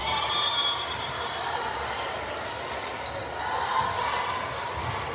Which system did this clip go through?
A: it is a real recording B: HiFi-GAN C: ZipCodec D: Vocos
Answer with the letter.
A